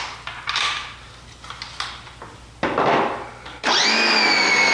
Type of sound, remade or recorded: recorded